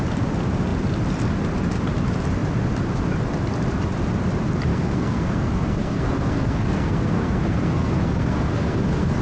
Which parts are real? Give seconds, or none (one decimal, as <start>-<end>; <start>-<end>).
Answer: 0.0-4.7